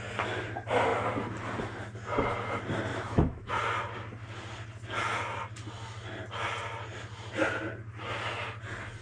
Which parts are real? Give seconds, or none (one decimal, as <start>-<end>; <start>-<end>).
0.0-2.9; 3.5-9.0